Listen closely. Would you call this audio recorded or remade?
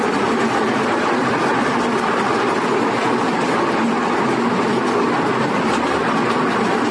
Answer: recorded